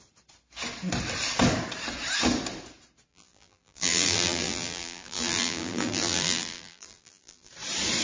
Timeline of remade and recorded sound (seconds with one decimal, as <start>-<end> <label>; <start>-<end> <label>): 0.0-3.1 recorded; 3.1-7.5 remade; 7.5-8.0 recorded